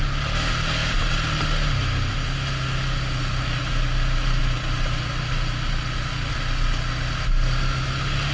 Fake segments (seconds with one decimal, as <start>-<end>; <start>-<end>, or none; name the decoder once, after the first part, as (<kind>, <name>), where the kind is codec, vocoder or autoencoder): none